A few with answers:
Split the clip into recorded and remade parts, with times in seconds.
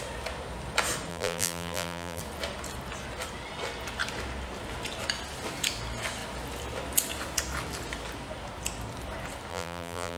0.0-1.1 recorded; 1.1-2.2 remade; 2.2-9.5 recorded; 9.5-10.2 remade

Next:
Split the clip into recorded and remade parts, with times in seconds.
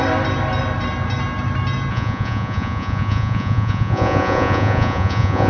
0.0-1.9 recorded; 1.9-5.5 remade